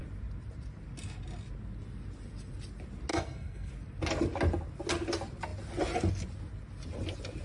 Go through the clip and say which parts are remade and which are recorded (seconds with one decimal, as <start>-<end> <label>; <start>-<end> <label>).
0.0-3.1 recorded; 3.1-3.7 remade; 3.7-7.4 recorded

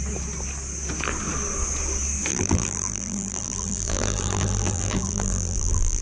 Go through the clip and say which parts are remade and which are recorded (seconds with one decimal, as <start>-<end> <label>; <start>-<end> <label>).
0.0-2.3 recorded; 2.3-6.0 remade

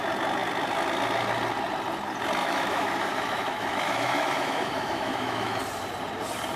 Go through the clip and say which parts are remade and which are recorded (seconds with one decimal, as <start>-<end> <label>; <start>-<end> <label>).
0.0-2.4 recorded; 2.4-5.6 remade; 5.6-6.6 recorded

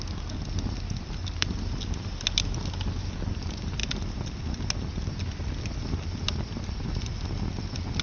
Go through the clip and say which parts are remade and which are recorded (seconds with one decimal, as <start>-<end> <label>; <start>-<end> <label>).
0.0-8.0 recorded

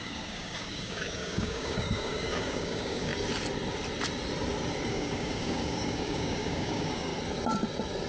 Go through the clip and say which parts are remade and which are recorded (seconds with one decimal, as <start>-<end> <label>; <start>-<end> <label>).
0.0-3.1 remade; 3.1-4.9 recorded; 4.9-7.1 remade; 7.1-8.1 recorded

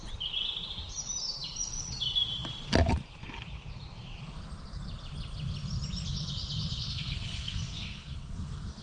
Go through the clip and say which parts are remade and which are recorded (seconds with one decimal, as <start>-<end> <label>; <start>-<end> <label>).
0.0-6.9 recorded; 6.9-8.8 remade